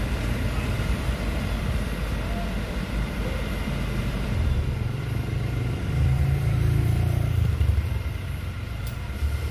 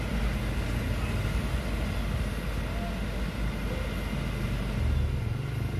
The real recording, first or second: second